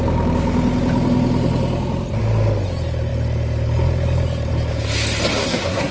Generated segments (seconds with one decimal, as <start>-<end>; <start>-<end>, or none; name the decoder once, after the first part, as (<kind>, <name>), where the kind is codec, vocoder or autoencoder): 5.4-5.9 (codec, SNAC)